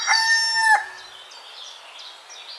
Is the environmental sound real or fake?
real